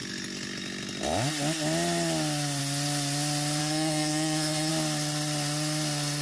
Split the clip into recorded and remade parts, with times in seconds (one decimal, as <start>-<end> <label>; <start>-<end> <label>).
0.0-3.6 recorded; 3.6-4.7 remade; 4.7-6.2 recorded